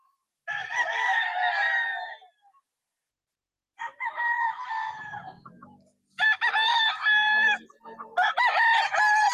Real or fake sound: real